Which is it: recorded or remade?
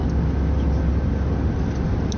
recorded